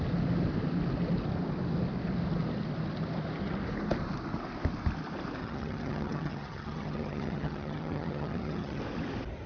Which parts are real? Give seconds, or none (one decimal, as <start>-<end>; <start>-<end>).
0.0-5.4; 8.8-9.5